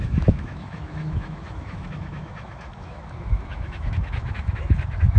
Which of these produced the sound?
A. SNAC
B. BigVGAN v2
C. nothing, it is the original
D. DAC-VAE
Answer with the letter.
D